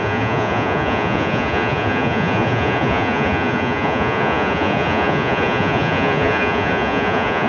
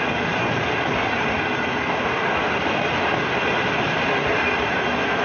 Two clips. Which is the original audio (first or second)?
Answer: second